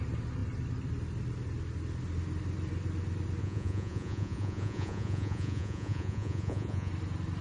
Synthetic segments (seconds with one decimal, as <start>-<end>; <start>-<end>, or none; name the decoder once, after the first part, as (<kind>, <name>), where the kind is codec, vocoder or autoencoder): 3.4-6.9 (vocoder, Vocos)